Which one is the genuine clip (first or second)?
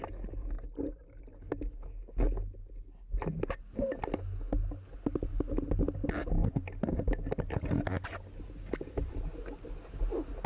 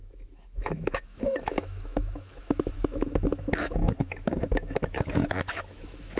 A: first